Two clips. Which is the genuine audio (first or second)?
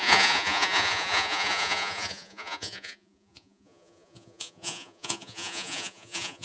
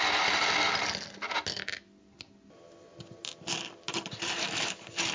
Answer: second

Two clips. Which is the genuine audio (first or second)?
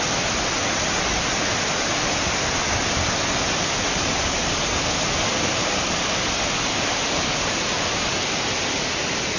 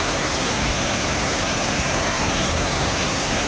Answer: first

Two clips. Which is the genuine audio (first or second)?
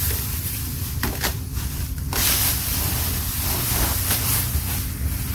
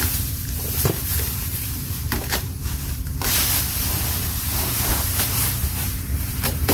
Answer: first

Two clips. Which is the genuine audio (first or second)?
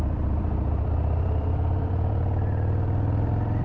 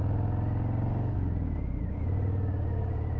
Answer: second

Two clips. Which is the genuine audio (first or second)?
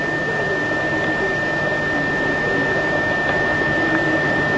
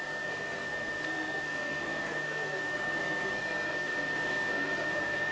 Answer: first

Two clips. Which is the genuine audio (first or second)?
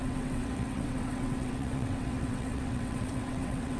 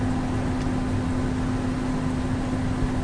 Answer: second